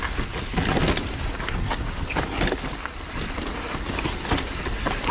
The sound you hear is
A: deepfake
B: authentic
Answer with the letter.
B